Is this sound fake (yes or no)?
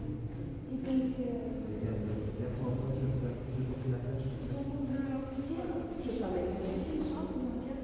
no